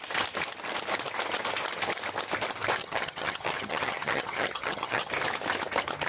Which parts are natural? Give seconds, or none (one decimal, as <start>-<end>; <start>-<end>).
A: 0.0-2.8; 5.1-6.1

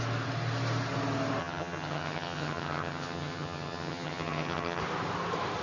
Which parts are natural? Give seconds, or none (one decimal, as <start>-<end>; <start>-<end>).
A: 0.0-1.4; 4.8-5.6

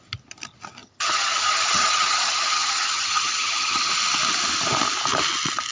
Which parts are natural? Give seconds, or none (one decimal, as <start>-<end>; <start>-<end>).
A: 0.0-0.8; 3.9-5.7